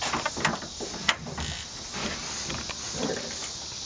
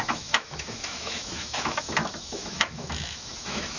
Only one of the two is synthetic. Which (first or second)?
second